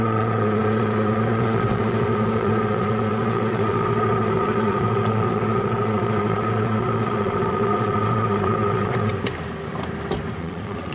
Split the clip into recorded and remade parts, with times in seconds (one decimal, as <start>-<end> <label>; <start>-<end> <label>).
0.0-9.1 remade; 9.1-10.4 recorded; 10.4-10.9 remade